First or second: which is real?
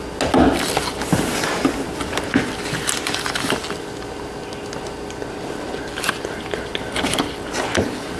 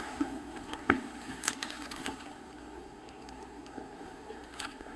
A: first